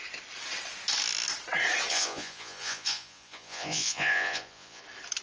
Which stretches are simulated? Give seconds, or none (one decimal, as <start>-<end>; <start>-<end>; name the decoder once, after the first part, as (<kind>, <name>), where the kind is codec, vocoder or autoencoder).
1.9-4.8 (vocoder, Vocos)

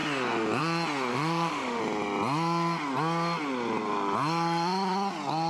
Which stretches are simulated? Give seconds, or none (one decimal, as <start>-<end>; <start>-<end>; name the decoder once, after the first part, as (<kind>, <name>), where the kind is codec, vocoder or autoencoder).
1.1-1.8 (autoencoder, DAC-VAE)